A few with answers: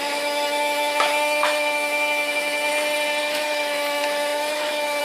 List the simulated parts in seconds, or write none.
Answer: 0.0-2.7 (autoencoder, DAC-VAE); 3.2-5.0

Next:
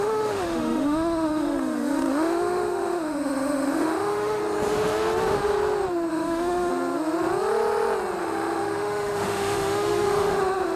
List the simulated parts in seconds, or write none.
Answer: 0.0-4.4 (autoencoder, DAC-VAE); 6.1-6.7; 8.2-10.8

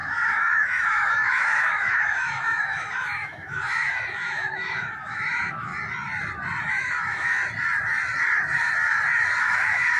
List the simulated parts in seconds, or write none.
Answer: 0.0-5.7 (autoencoder, DAC-VAE); 6.7-7.4; 9.4-10.0